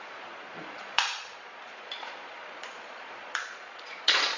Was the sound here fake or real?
fake